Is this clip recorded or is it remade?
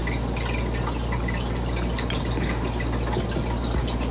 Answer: recorded